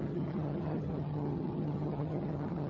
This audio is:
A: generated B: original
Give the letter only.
A